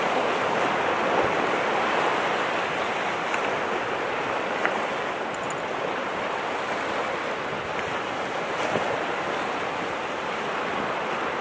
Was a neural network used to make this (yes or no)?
no